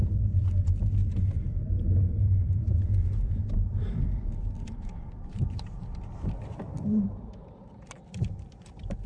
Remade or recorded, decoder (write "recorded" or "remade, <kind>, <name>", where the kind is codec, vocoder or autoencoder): remade, vocoder, BigVGAN v2